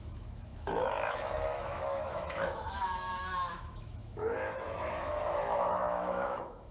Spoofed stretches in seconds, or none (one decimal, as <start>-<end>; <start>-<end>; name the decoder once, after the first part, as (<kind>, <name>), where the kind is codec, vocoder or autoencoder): 0.0-6.7 (autoencoder, DAC-VAE)

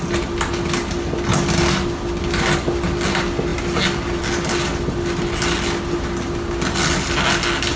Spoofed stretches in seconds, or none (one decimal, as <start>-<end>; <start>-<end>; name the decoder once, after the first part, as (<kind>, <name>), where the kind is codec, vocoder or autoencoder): none

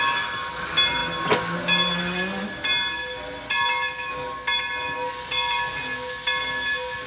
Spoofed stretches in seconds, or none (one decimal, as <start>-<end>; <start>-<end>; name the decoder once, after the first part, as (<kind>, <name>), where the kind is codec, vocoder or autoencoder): none